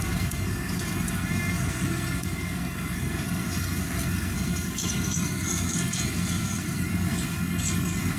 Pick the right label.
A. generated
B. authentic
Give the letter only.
A